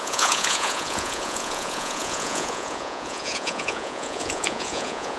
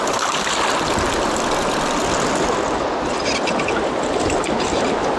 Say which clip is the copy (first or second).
first